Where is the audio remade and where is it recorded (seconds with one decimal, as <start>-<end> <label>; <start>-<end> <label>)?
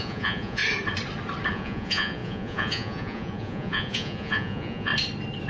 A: 0.0-0.6 remade; 0.6-1.5 recorded; 1.5-4.9 remade; 4.9-5.5 recorded